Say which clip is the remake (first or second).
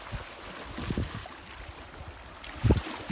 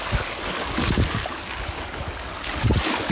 second